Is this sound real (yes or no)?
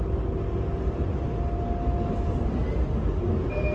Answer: yes